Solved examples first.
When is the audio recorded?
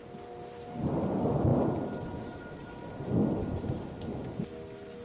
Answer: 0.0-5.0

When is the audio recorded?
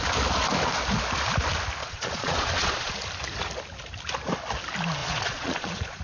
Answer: 0.0-1.8; 2.9-5.0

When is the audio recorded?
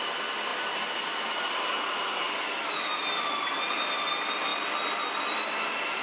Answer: 0.0-6.0